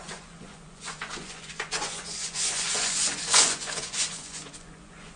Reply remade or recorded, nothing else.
remade